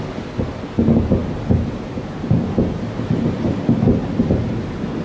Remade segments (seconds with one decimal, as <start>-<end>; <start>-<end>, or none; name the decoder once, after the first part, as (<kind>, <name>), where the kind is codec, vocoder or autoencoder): none